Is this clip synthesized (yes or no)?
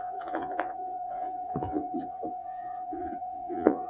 yes